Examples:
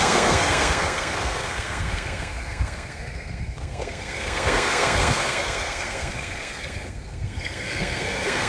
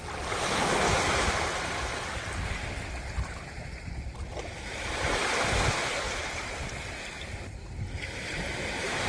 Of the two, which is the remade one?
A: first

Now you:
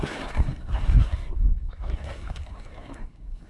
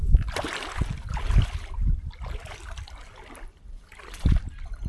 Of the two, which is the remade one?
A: first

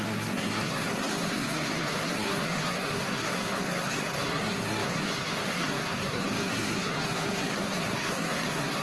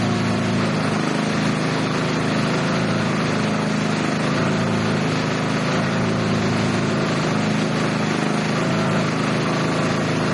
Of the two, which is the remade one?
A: first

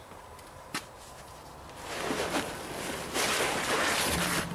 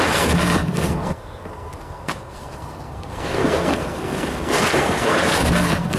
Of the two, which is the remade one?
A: second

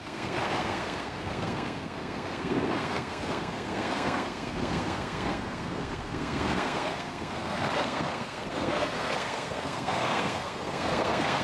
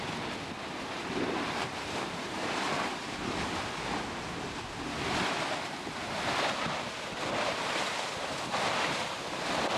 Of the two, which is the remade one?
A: first